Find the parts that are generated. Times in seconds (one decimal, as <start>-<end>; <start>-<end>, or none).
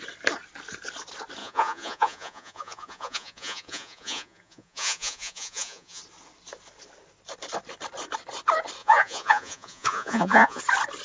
1.4-6.0; 8.8-10.6